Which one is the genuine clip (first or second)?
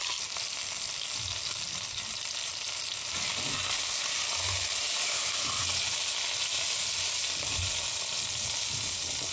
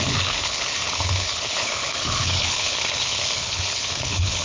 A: first